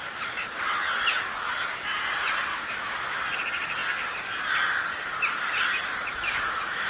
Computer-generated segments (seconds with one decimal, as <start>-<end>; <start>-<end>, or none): 2.5-3.2; 6.1-6.9